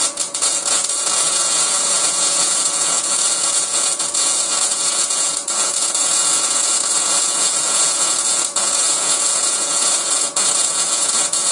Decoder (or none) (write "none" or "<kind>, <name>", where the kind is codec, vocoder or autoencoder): vocoder, Vocos